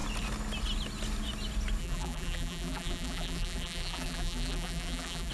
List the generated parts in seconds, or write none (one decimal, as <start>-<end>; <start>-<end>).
1.8-5.3